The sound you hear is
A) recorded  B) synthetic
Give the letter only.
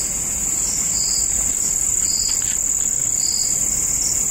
A